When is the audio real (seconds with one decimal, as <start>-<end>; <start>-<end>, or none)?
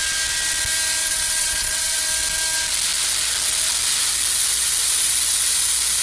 0.0-1.0; 2.1-6.0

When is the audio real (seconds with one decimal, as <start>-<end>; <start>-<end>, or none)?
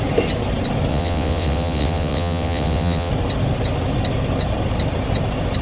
0.0-0.9; 3.1-5.6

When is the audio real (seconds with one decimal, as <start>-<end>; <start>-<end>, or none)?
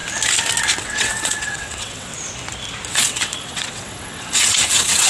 0.0-0.8; 2.1-2.9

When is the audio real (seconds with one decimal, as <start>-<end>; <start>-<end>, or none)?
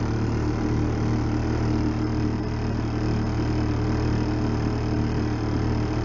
0.0-6.0